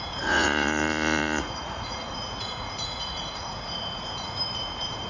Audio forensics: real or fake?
fake